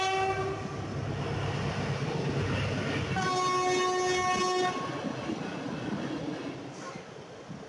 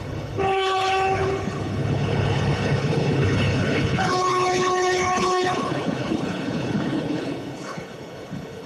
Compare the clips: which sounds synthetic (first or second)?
second